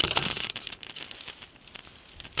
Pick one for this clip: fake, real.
real